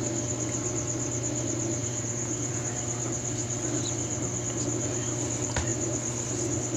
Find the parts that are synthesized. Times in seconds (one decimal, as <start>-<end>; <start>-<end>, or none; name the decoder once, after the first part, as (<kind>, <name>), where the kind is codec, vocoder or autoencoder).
1.8-2.6 (vocoder, Vocos)